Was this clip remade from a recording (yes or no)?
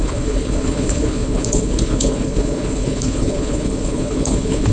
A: yes